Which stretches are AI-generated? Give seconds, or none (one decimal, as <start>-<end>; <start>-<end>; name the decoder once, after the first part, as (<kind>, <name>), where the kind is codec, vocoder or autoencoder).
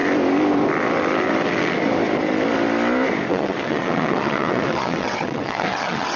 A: 3.3-6.2 (vocoder, WaveNeXt)